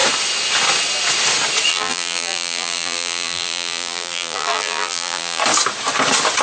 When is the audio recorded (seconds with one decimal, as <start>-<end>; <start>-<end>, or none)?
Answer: 0.0-1.7; 5.4-6.4